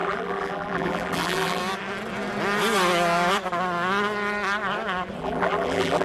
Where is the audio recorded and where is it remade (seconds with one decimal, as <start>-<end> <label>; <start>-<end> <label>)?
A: 0.0-1.6 remade; 1.6-5.2 recorded; 5.2-6.0 remade